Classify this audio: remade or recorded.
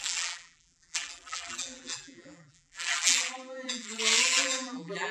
remade